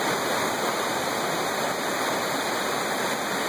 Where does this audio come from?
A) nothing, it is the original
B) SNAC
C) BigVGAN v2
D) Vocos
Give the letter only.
A